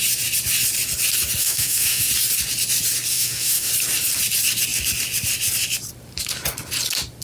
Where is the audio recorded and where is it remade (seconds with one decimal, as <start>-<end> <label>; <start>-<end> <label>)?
0.0-1.4 recorded; 1.4-2.1 remade; 2.1-3.1 recorded; 3.1-3.7 remade; 3.7-7.2 recorded

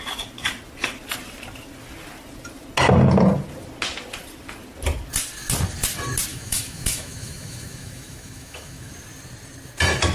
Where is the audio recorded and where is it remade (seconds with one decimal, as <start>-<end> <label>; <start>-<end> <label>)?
0.0-6.3 recorded; 6.3-8.9 remade; 8.9-10.1 recorded

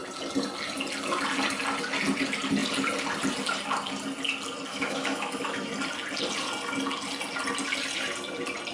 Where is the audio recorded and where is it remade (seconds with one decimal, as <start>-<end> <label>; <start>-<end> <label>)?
0.0-4.7 recorded; 4.7-5.7 remade; 5.7-8.7 recorded

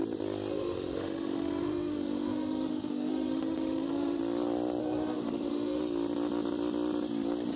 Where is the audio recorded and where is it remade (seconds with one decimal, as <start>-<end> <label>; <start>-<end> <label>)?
0.0-0.5 recorded; 0.5-4.2 remade; 4.2-4.8 recorded; 4.8-5.8 remade; 5.8-7.6 recorded

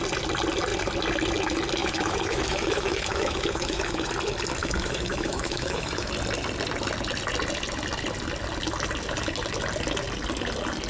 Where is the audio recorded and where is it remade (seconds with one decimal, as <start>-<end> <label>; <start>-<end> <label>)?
0.0-1.8 recorded; 1.8-4.1 remade; 4.1-4.6 recorded; 4.6-6.1 remade; 6.1-10.9 recorded

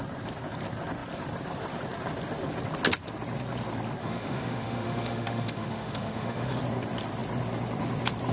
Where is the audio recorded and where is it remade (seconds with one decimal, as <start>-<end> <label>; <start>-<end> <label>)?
0.0-4.0 recorded; 4.0-6.6 remade; 6.6-8.3 recorded

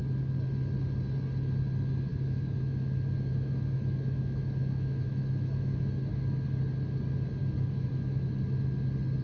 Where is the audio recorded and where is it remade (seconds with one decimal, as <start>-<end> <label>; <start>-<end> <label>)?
0.0-2.1 recorded; 2.1-6.1 remade; 6.1-7.4 recorded; 7.4-8.3 remade; 8.3-9.2 recorded